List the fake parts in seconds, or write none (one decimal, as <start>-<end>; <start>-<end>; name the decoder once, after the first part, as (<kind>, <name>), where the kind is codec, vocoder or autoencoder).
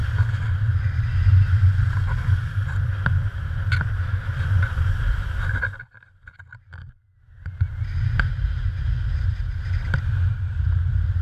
none